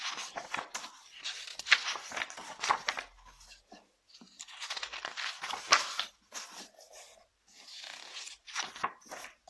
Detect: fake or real real